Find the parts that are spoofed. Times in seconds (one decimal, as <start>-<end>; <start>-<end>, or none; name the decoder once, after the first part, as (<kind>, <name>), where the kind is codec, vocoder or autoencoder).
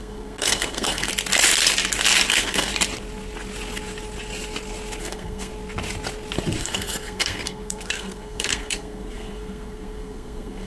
0.0-1.1 (codec, SNAC); 2.3-2.7; 5.0-5.5; 6.6-10.7